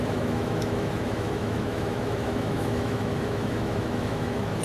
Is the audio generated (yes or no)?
yes